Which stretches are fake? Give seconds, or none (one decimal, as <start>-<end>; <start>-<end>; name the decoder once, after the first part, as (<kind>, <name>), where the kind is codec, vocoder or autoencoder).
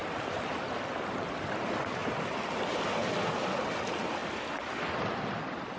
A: none